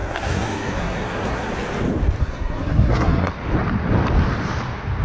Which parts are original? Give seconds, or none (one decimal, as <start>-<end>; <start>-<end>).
1.5-2.2; 3.3-5.0